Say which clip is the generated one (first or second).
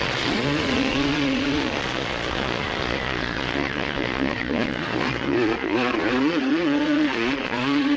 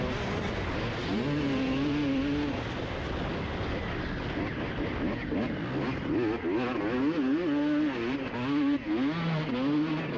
first